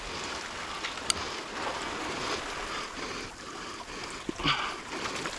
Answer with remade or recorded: recorded